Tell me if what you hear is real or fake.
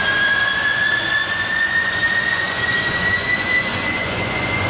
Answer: fake